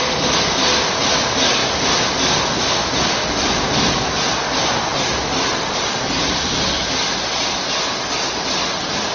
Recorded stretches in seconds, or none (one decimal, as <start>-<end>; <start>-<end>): 0.0-9.1